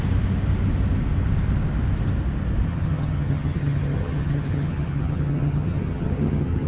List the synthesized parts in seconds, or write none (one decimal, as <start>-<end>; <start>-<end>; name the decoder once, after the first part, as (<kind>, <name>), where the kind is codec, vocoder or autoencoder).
2.7-6.7 (vocoder, HiFi-GAN)